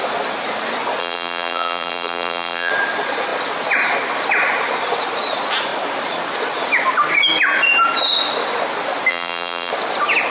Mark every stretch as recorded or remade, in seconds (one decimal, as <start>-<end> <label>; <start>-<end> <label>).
0.0-1.0 recorded; 1.0-2.7 remade; 2.7-9.1 recorded; 9.1-9.7 remade; 9.7-10.3 recorded